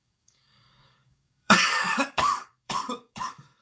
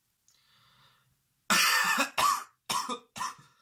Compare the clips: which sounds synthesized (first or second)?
first